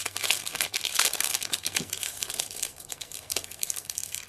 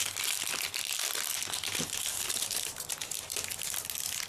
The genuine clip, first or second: second